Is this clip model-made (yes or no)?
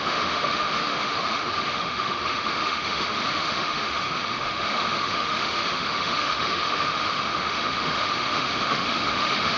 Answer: yes